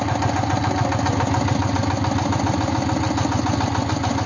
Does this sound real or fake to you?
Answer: real